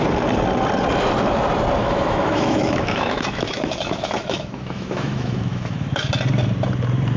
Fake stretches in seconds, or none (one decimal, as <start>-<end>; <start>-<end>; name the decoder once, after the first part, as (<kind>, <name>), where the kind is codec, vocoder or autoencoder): 1.8-6.1 (autoencoder, DAC-VAE)